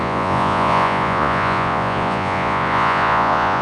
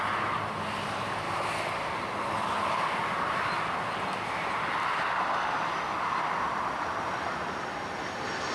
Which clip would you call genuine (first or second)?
second